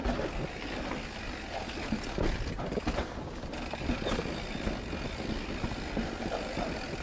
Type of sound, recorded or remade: recorded